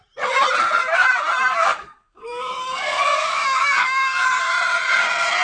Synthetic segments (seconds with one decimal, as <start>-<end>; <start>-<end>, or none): 1.6-4.4